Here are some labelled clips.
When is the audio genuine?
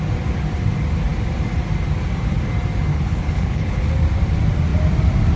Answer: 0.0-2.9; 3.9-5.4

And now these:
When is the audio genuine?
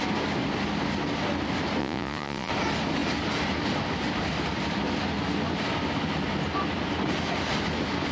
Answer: 0.0-1.8; 2.5-8.1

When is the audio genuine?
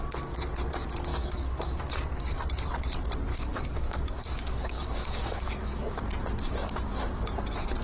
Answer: 0.0-1.1; 1.8-3.3; 6.0-7.8